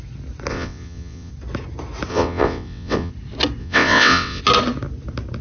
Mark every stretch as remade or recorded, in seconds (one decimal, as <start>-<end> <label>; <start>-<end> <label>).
0.0-0.5 recorded; 0.5-1.3 remade; 1.3-2.1 recorded; 2.1-3.1 remade; 3.1-3.6 recorded; 3.6-4.4 remade; 4.4-5.4 recorded